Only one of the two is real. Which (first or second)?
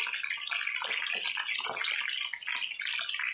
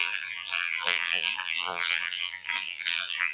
first